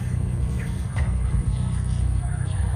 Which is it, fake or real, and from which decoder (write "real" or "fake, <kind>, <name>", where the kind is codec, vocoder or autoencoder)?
fake, codec, SNAC